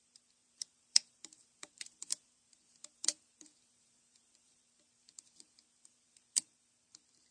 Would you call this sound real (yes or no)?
no